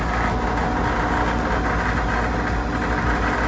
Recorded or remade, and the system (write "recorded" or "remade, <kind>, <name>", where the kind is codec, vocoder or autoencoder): recorded